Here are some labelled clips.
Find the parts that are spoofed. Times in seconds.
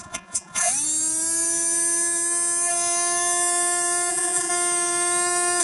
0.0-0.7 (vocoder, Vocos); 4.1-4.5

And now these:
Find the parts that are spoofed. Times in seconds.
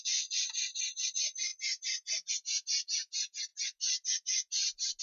none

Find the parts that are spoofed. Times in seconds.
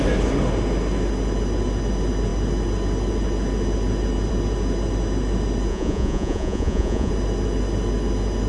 5.7-7.1 (vocoder, Vocos)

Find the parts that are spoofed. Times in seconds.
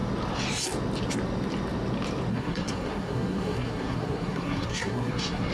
2.3-5.5 (codec, SNAC)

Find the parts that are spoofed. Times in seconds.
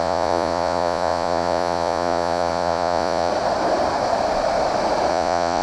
0.0-3.3 (vocoder, Vocos); 5.1-5.6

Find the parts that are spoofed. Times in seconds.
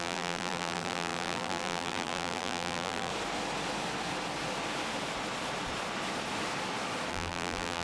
0.0-3.1 (vocoder, BigVGAN v2); 7.1-7.8